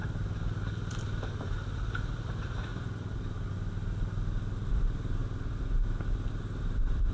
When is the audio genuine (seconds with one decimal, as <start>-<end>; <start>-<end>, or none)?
2.7-4.7; 5.2-7.1